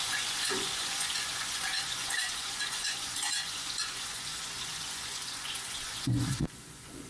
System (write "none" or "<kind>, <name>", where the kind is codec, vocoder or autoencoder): vocoder, Vocos